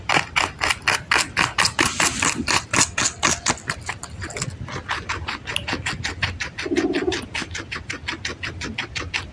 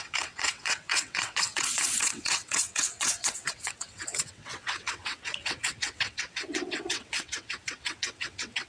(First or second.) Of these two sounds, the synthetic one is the second